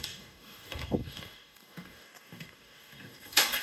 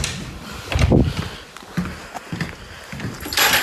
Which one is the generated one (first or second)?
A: first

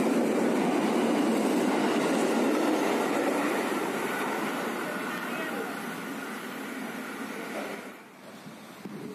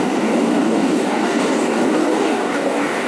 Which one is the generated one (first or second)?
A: second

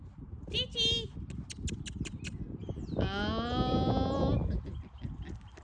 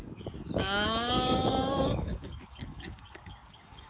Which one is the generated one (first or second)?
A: second